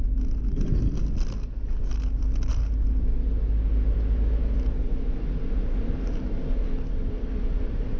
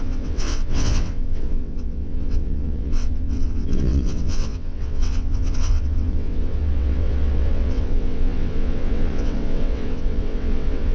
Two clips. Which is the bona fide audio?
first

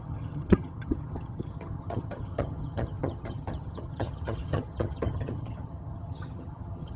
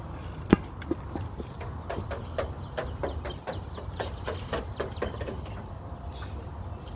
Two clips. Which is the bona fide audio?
second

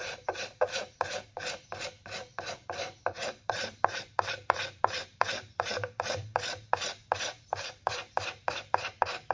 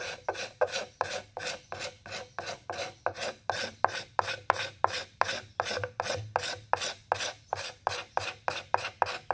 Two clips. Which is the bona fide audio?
second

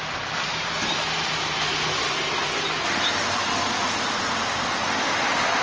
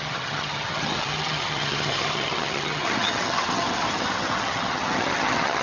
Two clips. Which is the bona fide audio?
first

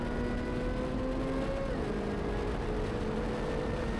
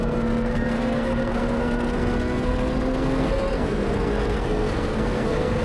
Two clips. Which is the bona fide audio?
first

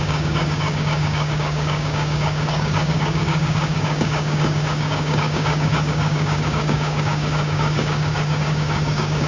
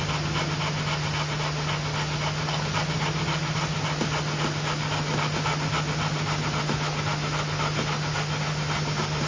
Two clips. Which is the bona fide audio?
second